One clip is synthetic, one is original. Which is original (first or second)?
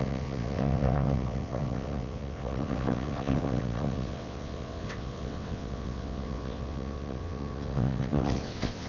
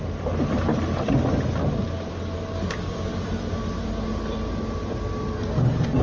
second